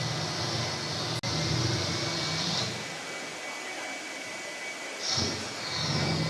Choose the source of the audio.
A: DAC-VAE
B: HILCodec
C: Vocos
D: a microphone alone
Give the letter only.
D